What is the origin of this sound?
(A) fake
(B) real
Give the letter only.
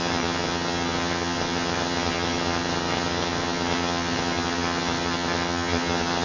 A